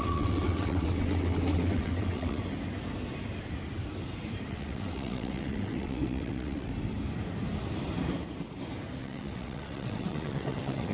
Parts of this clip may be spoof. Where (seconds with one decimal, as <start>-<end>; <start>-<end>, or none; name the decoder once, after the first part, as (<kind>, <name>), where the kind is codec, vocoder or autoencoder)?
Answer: 0.0-2.4 (vocoder, WaveNeXt); 4.5-6.7; 9.0-10.9